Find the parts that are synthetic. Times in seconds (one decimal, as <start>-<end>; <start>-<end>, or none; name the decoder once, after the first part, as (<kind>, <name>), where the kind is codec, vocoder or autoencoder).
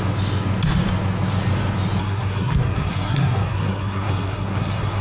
2.0-5.0 (codec, SNAC)